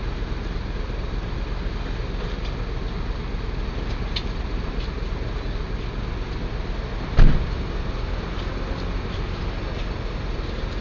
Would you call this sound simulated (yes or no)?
no